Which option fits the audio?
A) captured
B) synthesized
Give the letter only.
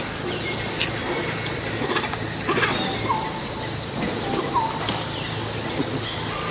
A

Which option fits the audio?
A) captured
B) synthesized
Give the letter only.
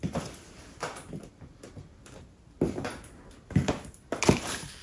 A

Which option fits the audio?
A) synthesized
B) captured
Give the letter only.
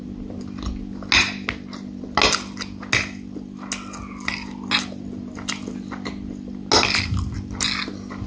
B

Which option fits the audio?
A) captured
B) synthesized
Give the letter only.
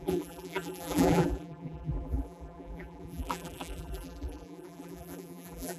B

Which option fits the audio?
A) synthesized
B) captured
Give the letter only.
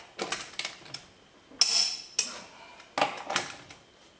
B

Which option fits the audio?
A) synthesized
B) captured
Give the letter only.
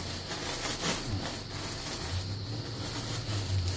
B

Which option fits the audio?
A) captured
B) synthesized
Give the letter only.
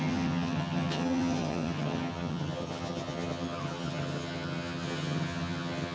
B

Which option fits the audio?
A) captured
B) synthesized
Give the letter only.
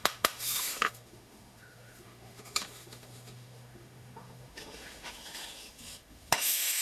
B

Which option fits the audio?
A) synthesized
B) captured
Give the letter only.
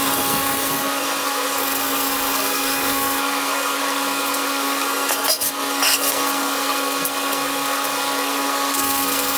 A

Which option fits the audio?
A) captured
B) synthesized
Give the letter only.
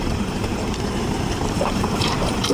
B